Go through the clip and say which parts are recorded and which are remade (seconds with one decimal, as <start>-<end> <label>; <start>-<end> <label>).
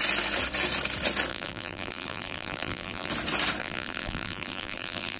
0.0-1.3 recorded; 1.3-3.1 remade; 3.1-3.6 recorded; 3.6-5.2 remade